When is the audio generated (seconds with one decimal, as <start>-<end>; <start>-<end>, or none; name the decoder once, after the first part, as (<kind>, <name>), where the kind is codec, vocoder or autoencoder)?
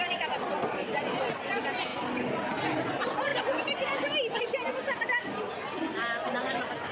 none